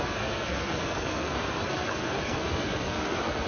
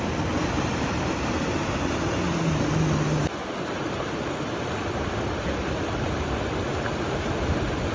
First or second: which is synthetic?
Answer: first